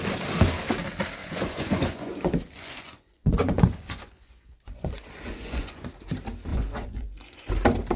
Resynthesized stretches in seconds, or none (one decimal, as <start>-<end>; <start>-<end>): 1.2-5.9; 6.5-7.5